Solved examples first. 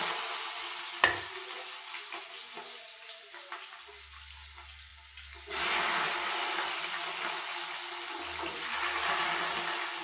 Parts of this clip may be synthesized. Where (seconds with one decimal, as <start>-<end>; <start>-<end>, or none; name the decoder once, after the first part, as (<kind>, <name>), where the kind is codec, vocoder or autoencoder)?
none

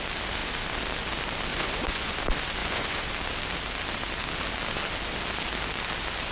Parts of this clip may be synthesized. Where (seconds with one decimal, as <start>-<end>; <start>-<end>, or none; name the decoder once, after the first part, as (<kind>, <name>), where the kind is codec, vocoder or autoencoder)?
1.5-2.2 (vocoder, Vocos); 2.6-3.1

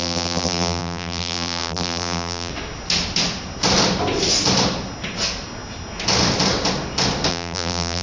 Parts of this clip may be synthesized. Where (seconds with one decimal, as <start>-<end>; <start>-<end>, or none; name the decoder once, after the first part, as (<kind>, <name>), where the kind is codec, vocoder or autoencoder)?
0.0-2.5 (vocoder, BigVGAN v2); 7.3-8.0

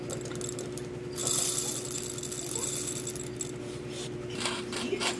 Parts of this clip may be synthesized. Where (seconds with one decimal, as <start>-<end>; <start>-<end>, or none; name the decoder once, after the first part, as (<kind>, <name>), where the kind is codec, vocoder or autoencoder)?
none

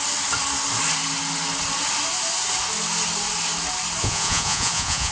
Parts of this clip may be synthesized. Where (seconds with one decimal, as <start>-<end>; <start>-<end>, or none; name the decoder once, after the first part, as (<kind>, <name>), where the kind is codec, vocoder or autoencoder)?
4.0-5.1 (vocoder, Vocos)

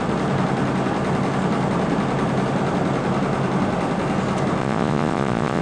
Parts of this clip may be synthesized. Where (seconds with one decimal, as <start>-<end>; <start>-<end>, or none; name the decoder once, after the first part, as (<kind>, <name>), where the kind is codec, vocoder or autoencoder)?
4.6-5.6 (vocoder, Vocos)

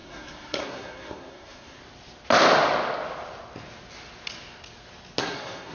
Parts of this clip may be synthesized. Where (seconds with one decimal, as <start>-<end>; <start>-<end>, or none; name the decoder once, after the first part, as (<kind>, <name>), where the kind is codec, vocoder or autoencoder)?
0.0-1.8 (codec, SNAC); 5.2-5.7

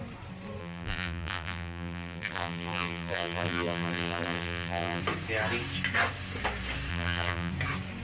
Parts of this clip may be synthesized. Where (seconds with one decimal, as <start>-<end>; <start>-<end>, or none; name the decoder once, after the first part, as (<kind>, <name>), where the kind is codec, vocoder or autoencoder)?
0.6-5.0 (vocoder, BigVGAN v2); 6.9-7.5